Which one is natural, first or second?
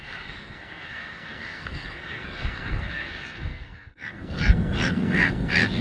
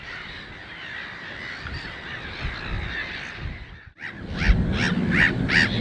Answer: second